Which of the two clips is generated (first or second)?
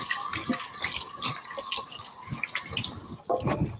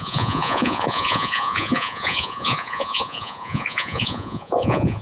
second